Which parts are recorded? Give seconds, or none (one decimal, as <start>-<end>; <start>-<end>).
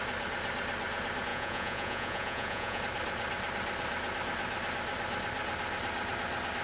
0.0-1.3; 2.8-6.6